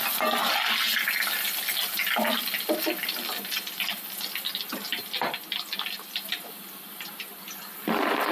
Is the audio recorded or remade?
recorded